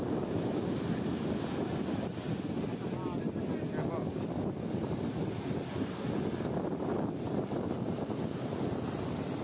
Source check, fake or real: real